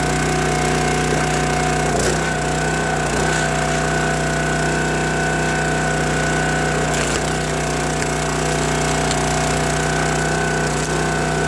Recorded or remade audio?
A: recorded